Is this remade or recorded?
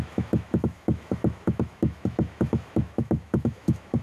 remade